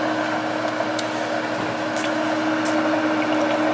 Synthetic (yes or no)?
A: no